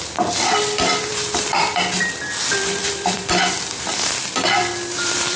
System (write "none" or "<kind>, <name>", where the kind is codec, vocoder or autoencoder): vocoder, BigVGAN v2